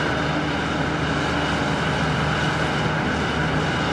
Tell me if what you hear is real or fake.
real